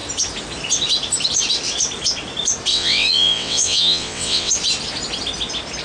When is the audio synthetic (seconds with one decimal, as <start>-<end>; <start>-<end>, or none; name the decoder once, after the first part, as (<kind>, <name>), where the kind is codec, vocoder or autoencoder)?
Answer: 2.7-4.5 (vocoder, WaveNeXt)